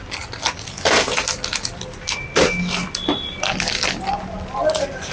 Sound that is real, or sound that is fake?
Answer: real